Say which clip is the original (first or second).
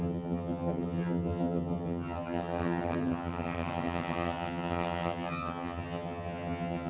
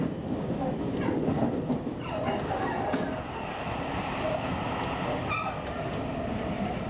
second